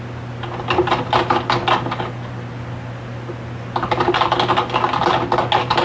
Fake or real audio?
real